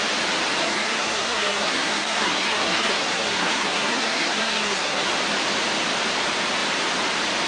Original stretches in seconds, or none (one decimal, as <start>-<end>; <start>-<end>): 0.0-0.6; 5.1-7.5